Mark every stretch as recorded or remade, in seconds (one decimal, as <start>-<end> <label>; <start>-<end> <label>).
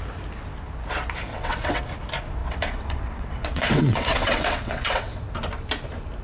0.0-1.3 recorded; 1.3-1.8 remade; 1.8-2.4 recorded; 2.4-5.3 remade; 5.3-6.2 recorded